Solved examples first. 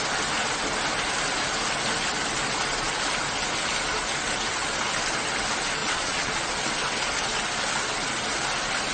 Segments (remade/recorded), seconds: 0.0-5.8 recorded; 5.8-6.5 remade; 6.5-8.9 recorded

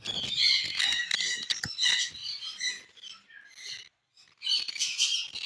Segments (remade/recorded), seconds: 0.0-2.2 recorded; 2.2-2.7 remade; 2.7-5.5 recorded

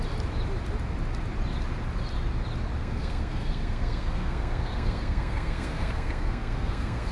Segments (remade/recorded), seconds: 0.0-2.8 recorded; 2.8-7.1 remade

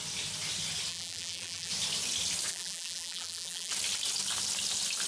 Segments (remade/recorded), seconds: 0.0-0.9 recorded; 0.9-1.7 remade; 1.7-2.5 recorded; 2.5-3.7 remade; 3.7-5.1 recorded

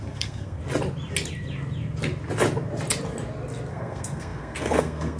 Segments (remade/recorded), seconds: 0.0-0.6 remade; 0.6-3.7 recorded; 3.7-5.2 remade